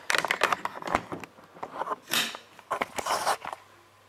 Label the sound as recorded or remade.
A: recorded